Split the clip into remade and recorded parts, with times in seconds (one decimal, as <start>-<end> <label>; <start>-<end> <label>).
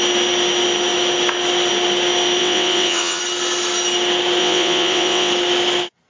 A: 0.0-2.4 recorded; 2.4-3.2 remade; 3.2-4.4 recorded; 4.4-5.3 remade; 5.3-6.1 recorded